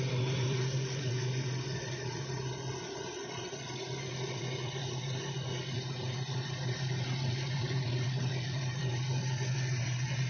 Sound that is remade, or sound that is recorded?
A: remade